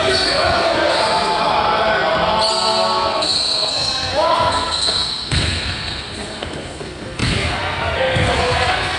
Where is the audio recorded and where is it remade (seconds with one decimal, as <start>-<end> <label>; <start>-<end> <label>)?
0.0-1.4 remade; 1.4-2.5 recorded; 2.5-9.0 remade